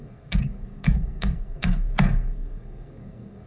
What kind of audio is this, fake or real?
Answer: fake